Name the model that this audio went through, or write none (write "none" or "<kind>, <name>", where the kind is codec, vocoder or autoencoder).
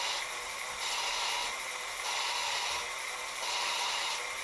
none